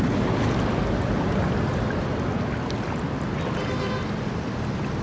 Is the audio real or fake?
real